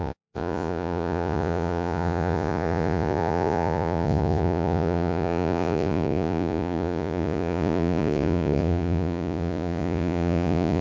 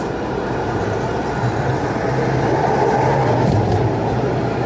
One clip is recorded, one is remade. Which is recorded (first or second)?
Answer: second